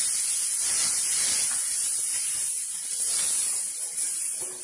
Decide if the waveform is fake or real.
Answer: fake